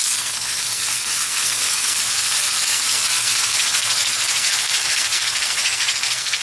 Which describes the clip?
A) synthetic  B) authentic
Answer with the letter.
A